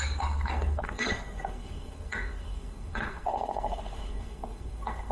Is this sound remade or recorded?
remade